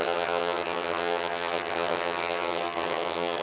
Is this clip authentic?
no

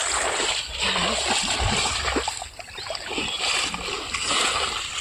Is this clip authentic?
yes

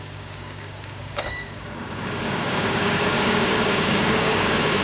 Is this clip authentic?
no